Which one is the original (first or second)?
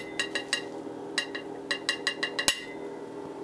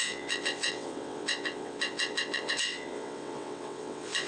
first